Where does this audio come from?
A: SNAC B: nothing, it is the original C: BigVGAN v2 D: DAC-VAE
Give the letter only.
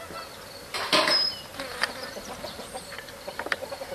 B